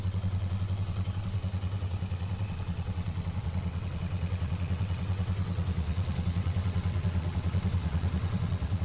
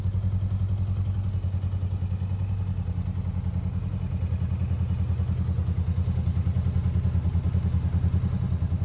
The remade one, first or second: first